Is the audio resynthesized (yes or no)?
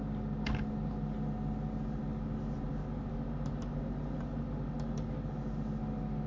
no